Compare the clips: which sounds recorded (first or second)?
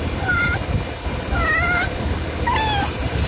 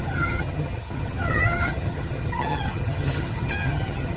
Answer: first